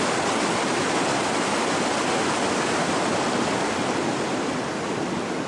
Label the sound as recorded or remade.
recorded